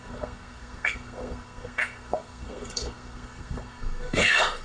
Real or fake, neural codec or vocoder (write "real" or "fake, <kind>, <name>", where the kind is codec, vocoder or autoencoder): fake, codec, SNAC